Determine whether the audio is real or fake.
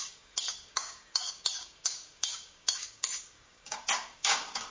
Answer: fake